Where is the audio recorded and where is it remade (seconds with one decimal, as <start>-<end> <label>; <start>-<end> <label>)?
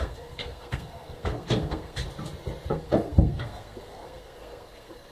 0.0-2.0 remade; 2.0-2.7 recorded; 2.7-5.1 remade